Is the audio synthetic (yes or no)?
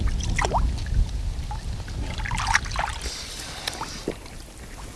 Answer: no